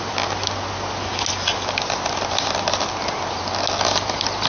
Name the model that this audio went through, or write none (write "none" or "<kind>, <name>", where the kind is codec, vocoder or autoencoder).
none